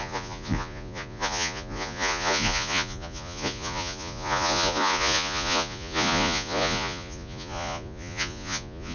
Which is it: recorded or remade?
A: remade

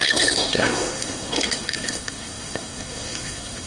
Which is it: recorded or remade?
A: remade